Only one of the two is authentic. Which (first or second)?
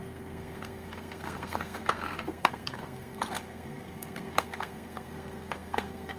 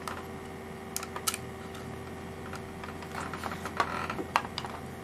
second